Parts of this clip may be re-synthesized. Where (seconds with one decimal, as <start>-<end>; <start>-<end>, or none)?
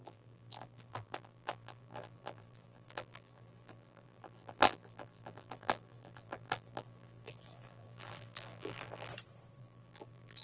0.0-9.1; 9.6-10.4